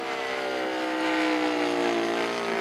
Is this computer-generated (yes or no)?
no